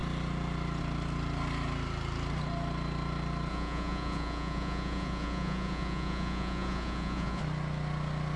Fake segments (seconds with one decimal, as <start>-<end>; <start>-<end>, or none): 3.5-7.4